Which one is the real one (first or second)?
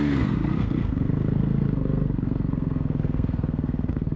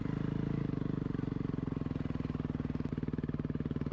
second